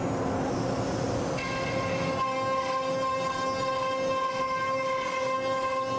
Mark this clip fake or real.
real